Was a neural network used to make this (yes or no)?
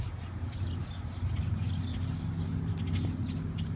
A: no